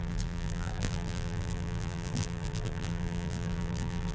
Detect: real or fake fake